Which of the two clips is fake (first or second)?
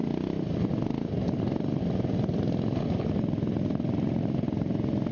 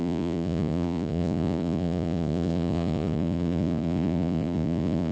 second